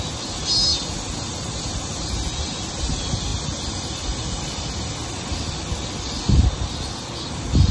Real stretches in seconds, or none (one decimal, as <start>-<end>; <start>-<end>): 0.0-7.7